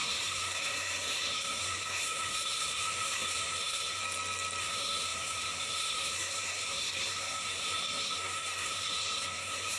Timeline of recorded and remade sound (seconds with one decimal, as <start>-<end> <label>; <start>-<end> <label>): 0.0-4.0 remade; 4.0-4.6 recorded; 4.6-9.8 remade

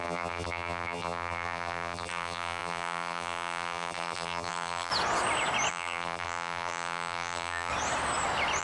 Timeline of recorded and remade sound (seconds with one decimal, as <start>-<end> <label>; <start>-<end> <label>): 0.0-4.9 remade; 4.9-5.7 recorded; 5.7-7.7 remade; 7.7-8.6 recorded

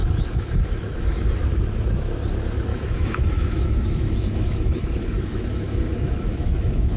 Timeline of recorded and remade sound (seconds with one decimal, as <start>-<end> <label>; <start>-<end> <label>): 0.0-1.4 remade; 1.4-2.7 recorded; 2.7-7.0 remade

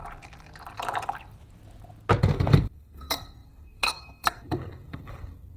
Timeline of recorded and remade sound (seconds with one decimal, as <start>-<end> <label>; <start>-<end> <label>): 0.0-2.2 recorded; 2.2-5.6 remade

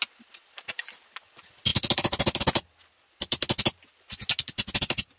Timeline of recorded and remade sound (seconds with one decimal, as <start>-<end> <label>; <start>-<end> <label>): 0.0-5.2 recorded

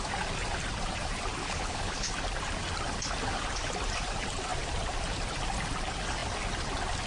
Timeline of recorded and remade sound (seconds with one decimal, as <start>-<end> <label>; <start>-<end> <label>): 0.0-1.4 recorded; 1.4-2.1 remade; 2.1-7.1 recorded